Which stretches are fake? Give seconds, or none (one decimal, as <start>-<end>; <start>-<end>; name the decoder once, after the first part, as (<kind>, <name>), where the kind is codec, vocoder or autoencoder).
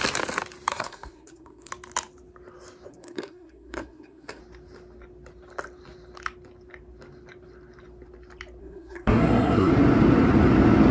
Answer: 0.7-1.7 (codec, SNAC); 2.9-4.4; 8.6-9.7